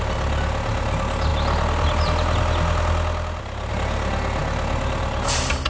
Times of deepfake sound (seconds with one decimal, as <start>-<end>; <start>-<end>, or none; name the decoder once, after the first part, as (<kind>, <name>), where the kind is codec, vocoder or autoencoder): none